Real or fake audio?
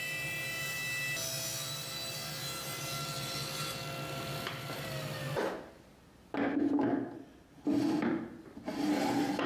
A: real